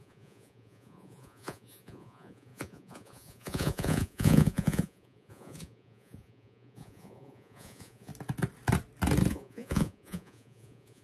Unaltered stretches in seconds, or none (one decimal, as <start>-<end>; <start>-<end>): 8.1-9.3